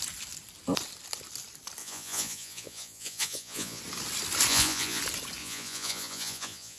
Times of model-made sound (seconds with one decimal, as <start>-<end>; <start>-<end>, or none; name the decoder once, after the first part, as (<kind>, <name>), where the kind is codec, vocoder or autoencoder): 1.8-3.8 (vocoder, Vocos); 4.5-5.0; 5.4-6.8